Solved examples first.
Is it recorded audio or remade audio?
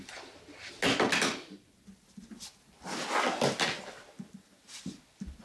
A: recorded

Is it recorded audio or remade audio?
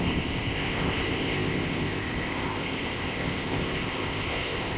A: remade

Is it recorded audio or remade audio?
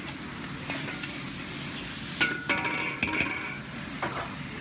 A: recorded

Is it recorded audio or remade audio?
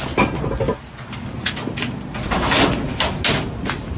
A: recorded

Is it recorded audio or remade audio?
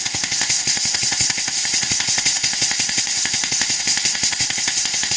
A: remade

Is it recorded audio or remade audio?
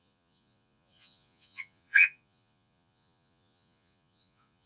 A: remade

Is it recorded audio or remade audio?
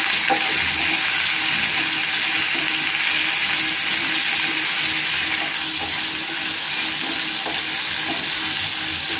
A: recorded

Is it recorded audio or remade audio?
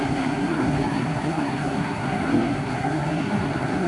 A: remade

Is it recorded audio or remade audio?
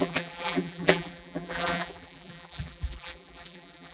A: remade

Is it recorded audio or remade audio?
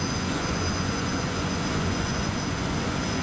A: remade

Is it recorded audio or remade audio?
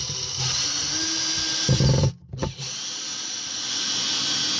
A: recorded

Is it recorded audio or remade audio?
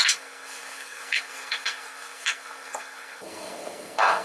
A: remade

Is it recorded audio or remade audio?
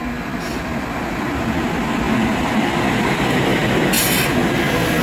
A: recorded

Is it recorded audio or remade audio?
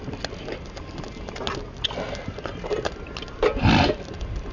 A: recorded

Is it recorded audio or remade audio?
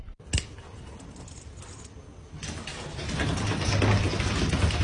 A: recorded